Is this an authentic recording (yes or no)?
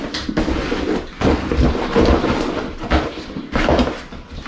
yes